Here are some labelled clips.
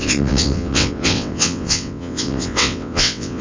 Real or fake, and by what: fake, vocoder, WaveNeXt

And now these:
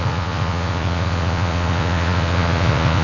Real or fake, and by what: fake, vocoder, Vocos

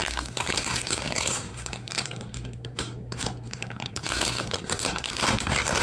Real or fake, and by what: fake, codec, SNAC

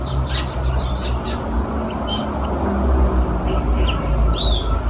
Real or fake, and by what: real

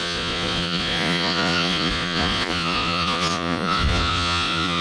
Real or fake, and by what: fake, vocoder, Vocos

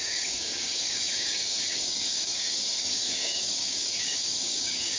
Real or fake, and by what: fake, codec, DAC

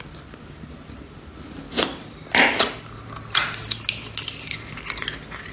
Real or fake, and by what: real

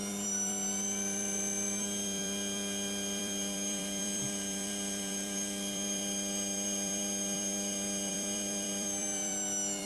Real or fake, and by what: fake, vocoder, BigVGAN v2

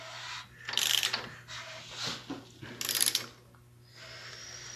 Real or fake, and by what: real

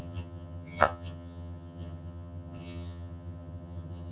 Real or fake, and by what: fake, vocoder, HiFi-GAN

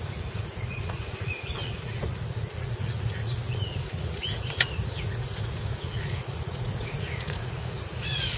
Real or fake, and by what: fake, vocoder, Vocos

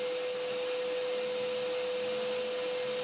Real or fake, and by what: real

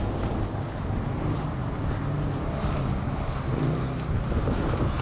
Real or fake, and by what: real